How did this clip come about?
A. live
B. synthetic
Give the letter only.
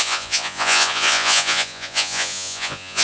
B